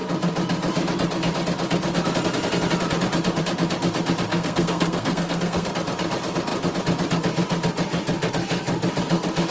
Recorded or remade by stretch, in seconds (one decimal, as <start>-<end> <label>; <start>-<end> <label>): 0.0-4.3 recorded; 4.3-5.7 remade; 5.7-9.5 recorded